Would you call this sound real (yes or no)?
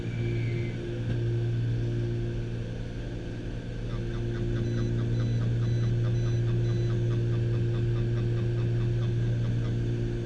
yes